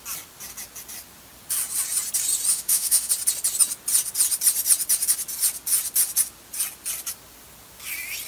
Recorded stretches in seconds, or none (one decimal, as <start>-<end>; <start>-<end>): 0.0-2.5; 3.1-8.3